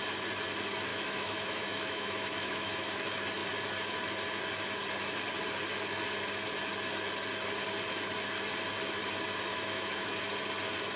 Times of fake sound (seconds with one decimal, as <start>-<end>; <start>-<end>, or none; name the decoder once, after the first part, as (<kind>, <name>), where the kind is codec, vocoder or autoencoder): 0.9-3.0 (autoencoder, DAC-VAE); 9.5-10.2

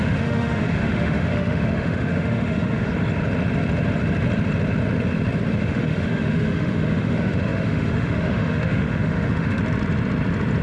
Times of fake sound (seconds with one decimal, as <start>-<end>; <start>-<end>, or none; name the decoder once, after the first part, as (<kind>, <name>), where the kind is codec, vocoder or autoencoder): 0.0-2.9 (autoencoder, DAC-VAE); 5.5-9.6

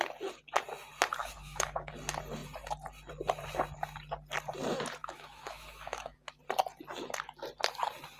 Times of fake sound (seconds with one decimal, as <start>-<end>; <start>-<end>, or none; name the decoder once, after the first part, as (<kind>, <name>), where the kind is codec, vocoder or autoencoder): 1.2-1.9 (autoencoder, DAC-VAE); 5.0-6.4